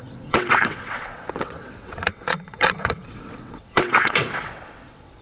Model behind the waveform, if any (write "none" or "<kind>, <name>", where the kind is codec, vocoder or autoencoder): vocoder, WaveNeXt